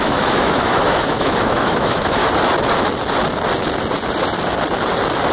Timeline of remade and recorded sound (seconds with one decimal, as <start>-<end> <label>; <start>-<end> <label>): 0.0-2.2 remade; 2.2-5.3 recorded